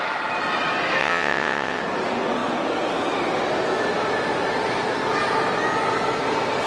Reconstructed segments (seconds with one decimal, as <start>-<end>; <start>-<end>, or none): 1.0-1.8